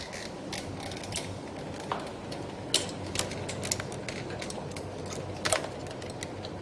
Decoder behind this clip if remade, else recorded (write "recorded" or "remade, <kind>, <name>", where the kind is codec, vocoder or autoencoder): recorded